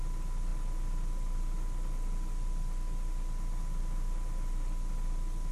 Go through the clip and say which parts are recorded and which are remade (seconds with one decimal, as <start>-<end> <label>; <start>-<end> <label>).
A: 0.0-5.5 recorded